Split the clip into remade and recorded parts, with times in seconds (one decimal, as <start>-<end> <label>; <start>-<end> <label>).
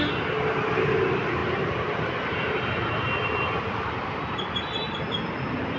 0.0-5.8 recorded